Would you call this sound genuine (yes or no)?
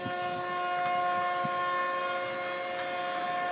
yes